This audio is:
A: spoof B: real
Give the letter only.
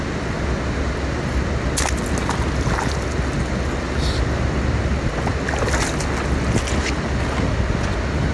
B